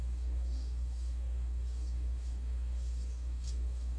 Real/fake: fake